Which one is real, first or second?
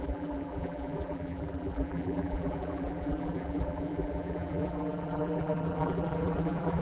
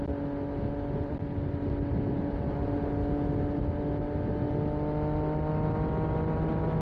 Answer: second